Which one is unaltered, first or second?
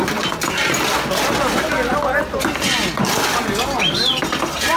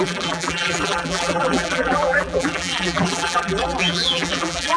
first